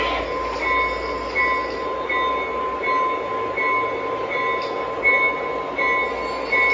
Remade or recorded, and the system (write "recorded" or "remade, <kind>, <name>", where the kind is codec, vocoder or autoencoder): recorded